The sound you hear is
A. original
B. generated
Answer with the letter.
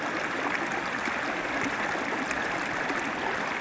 A